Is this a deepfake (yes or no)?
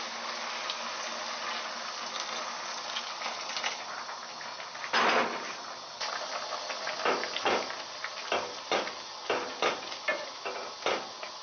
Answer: no